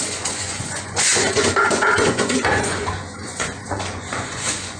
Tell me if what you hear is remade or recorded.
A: remade